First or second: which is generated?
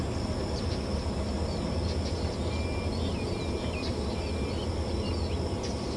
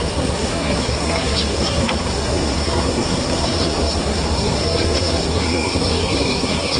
second